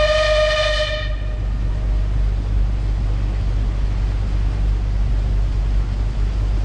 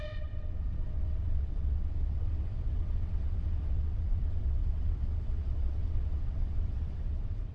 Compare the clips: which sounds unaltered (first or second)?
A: first